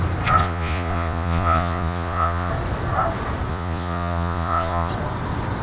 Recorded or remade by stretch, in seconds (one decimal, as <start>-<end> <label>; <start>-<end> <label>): 0.0-0.4 recorded; 0.4-2.5 remade; 2.5-3.5 recorded; 3.5-4.9 remade; 4.9-5.6 recorded